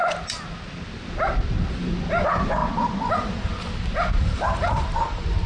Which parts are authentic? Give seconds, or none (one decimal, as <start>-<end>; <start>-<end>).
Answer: 0.0-2.1; 2.6-3.1; 3.5-4.2

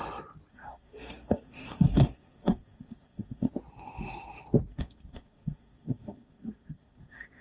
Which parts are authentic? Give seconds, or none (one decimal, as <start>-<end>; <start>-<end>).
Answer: 0.0-0.5; 3.5-4.7

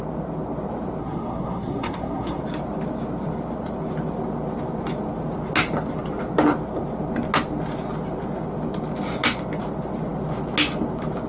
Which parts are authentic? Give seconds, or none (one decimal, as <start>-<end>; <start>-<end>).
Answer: 0.0-1.0; 2.4-11.3

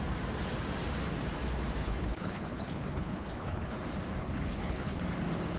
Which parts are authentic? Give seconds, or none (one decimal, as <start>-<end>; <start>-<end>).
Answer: 0.0-1.8; 3.8-4.2; 5.0-5.6

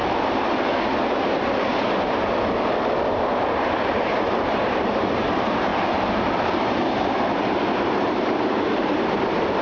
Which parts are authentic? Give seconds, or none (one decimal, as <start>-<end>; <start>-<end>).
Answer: 0.0-3.2; 5.7-6.7

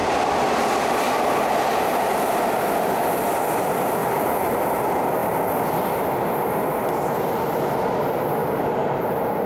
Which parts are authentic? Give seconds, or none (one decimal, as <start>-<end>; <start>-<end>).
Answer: 0.0-4.0; 4.5-8.4

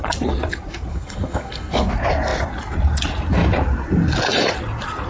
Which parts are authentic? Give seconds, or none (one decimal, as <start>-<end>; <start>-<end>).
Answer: 0.0-0.9; 1.9-5.1

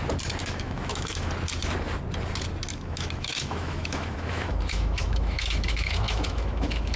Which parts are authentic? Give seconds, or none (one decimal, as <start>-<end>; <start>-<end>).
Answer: 0.0-0.4; 1.3-2.7